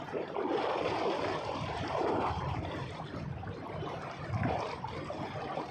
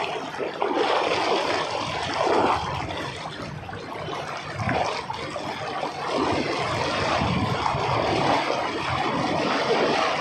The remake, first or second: first